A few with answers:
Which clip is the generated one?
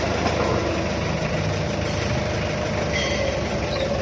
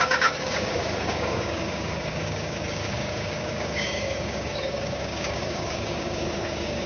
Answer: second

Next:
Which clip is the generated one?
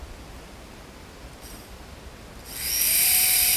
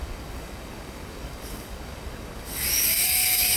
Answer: second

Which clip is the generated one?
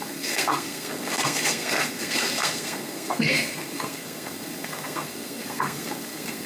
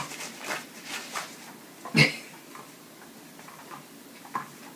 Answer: first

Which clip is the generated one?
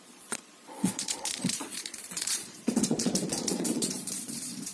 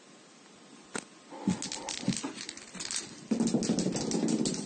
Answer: first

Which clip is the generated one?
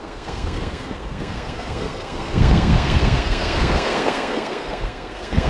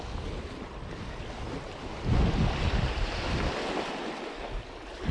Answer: first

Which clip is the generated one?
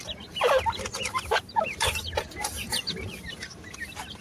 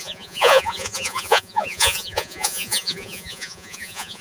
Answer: second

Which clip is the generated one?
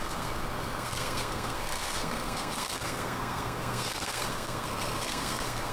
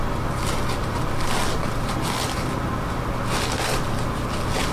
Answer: first